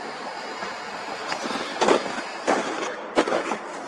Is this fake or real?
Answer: fake